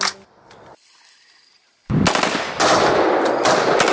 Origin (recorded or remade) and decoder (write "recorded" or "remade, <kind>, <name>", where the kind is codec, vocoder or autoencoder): recorded